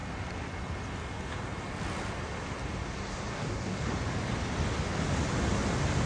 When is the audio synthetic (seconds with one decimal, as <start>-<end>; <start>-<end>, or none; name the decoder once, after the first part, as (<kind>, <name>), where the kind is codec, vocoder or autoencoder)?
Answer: 3.3-3.9 (codec, DAC)